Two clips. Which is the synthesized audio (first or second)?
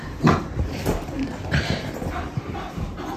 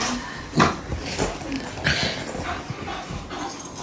first